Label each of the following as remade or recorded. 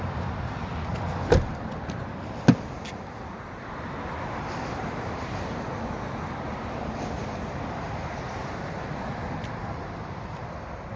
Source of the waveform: remade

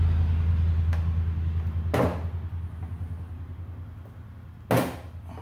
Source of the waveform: recorded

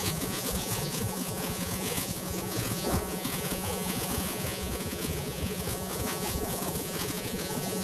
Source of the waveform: remade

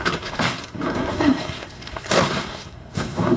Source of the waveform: remade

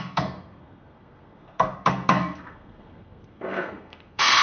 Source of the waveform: remade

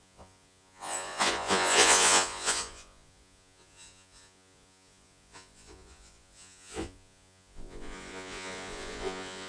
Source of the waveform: remade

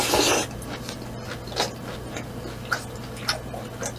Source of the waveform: recorded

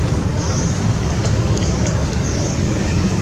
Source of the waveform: remade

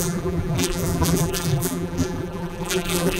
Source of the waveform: remade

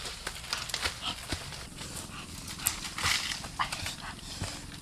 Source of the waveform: recorded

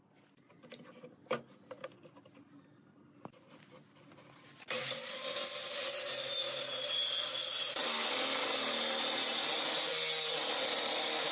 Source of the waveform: recorded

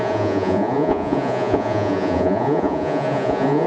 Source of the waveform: remade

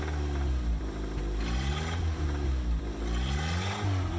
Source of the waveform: recorded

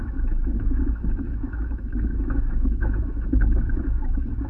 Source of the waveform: remade